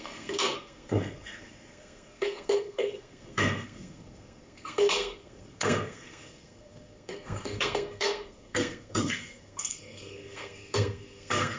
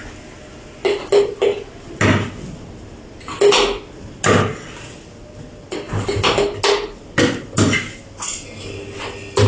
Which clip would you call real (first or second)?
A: second